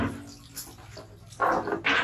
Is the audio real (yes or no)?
yes